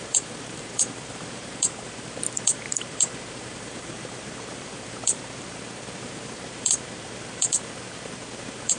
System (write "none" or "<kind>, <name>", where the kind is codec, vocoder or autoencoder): vocoder, BigVGAN v2